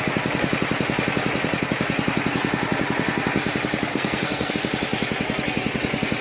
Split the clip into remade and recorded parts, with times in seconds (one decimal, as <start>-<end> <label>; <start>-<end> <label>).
0.0-3.9 recorded; 3.9-4.5 remade; 4.5-6.2 recorded